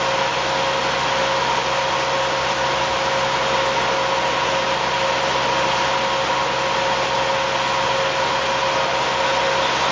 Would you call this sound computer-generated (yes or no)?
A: no